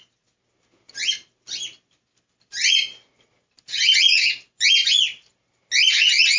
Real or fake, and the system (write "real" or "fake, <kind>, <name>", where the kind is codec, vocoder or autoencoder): real